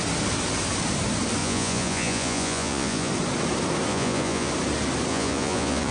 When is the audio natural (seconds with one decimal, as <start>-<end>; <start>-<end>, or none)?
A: 0.0-1.4; 3.1-3.9; 4.5-5.1